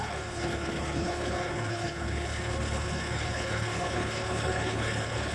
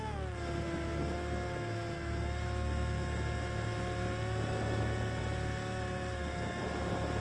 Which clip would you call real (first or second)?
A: second